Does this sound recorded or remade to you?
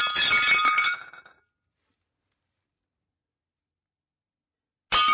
recorded